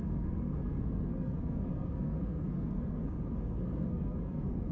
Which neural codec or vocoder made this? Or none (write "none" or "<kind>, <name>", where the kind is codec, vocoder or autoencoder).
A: codec, SNAC